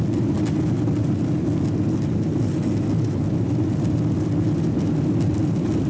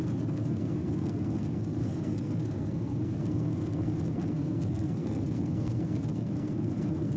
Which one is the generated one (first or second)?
second